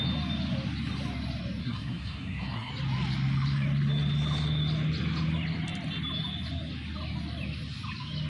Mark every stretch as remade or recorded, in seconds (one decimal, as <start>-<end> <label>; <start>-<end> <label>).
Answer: 0.0-1.6 recorded; 1.6-2.7 remade; 2.7-8.3 recorded